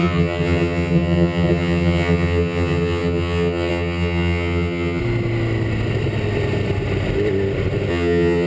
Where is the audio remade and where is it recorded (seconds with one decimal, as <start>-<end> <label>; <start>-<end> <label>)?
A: 0.0-5.0 remade; 5.0-7.9 recorded; 7.9-8.5 remade